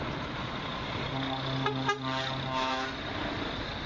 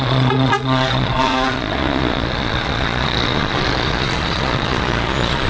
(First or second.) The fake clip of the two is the second